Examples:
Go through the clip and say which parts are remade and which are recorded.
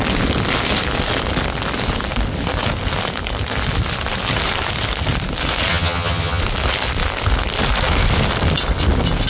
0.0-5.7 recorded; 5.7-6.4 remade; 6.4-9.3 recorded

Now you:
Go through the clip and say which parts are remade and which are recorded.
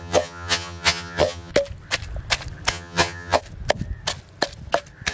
0.0-1.5 remade; 1.5-2.7 recorded; 2.7-3.4 remade; 3.4-5.1 recorded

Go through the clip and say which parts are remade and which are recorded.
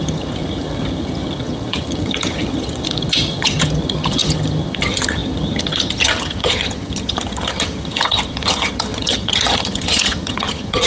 0.0-10.9 remade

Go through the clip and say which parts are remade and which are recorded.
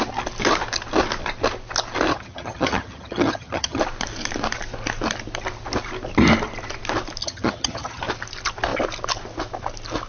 0.0-2.1 recorded; 2.1-3.8 remade; 3.8-7.2 recorded; 7.2-8.0 remade; 8.0-10.1 recorded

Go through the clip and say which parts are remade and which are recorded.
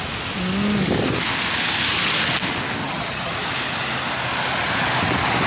0.0-2.8 recorded; 2.8-3.3 remade; 3.3-5.5 recorded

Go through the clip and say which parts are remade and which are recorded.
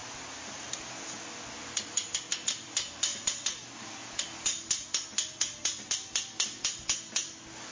0.0-7.7 recorded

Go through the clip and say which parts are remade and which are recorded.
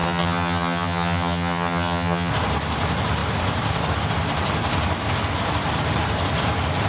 0.0-2.3 remade; 2.3-6.9 recorded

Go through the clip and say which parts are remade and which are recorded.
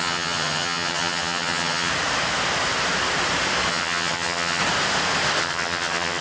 0.0-1.9 remade; 1.9-3.7 recorded; 3.7-4.6 remade; 4.6-5.4 recorded; 5.4-6.2 remade